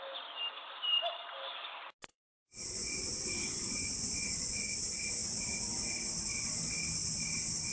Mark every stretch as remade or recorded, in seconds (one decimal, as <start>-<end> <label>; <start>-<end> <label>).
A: 0.0-2.1 recorded; 2.1-4.8 remade; 4.8-7.7 recorded